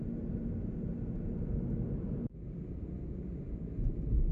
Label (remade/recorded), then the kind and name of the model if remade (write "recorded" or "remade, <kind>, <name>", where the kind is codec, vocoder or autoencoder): recorded